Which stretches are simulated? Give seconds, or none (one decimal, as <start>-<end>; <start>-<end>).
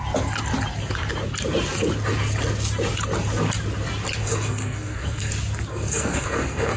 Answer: 4.2-5.3; 5.7-6.8